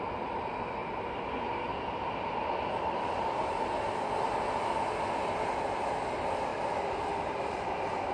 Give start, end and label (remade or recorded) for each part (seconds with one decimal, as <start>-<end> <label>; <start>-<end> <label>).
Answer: 0.0-8.1 recorded